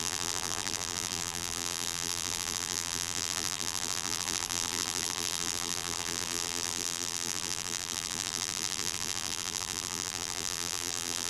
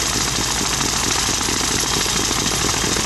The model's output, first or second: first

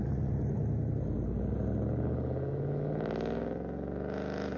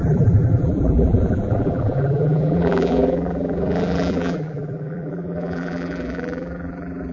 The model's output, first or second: second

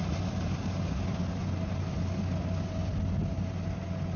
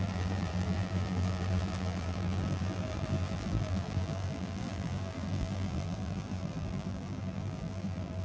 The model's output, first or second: second